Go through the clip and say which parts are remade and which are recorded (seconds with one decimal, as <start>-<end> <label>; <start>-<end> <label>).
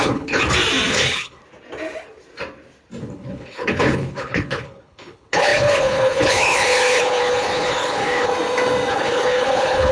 0.0-0.4 remade; 0.4-0.9 recorded; 0.9-1.4 remade; 1.4-3.0 recorded; 3.0-8.3 remade; 8.3-8.9 recorded; 8.9-9.9 remade